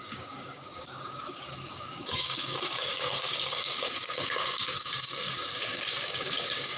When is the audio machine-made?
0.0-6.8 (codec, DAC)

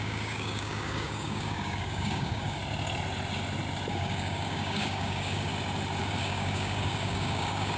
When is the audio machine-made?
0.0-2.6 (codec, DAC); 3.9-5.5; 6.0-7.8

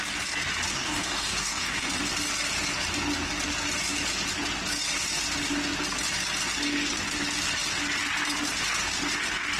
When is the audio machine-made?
0.7-1.9 (codec, DAC)

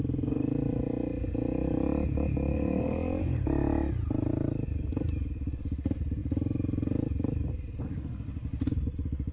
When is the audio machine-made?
2.5-3.2 (codec, DAC)

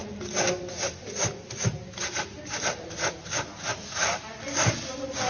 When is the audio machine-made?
none

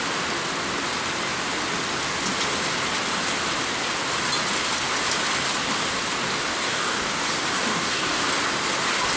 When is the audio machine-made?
6.5-7.3 (codec, DAC); 7.7-8.2